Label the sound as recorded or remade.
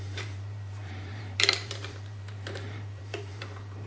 remade